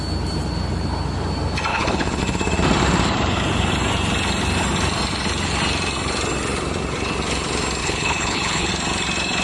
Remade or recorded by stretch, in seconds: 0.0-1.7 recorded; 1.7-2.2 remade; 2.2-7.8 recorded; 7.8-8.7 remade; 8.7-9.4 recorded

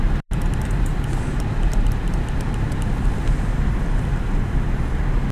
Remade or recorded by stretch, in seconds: 0.0-5.3 recorded

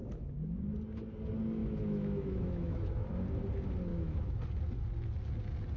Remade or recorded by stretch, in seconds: 0.0-1.6 recorded; 1.6-3.1 remade; 3.1-3.9 recorded; 3.9-4.4 remade; 4.4-5.8 recorded

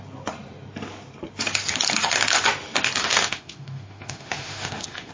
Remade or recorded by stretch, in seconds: 0.0-3.0 recorded; 3.0-5.1 remade

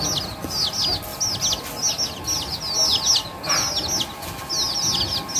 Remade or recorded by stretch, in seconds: 0.0-5.4 recorded

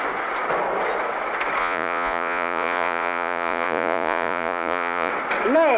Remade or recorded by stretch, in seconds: 0.0-1.6 recorded; 1.6-5.1 remade; 5.1-5.8 recorded

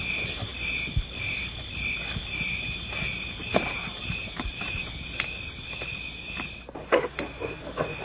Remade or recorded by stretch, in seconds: 0.0-0.5 remade; 0.5-2.2 recorded; 2.2-4.8 remade; 4.8-7.6 recorded; 7.6-8.0 remade